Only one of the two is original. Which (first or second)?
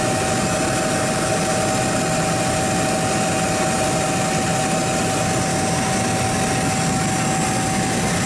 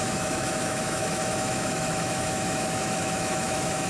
first